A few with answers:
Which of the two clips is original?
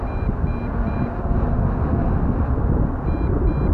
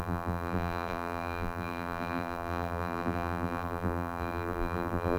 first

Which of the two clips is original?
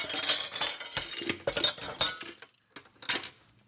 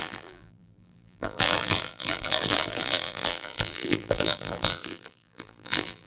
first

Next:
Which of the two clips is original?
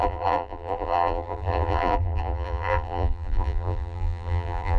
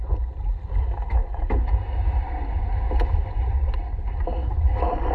second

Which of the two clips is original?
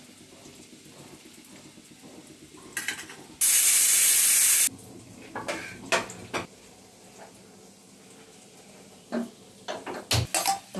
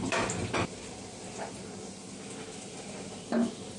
first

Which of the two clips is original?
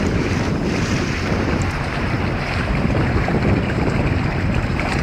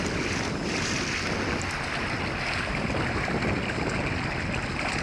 second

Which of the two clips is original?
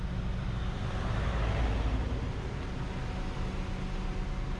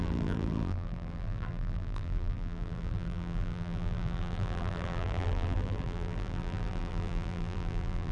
first